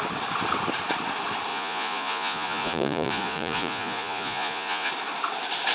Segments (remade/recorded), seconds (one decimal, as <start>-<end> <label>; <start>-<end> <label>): 0.0-1.5 recorded; 1.5-4.9 remade; 4.9-5.7 recorded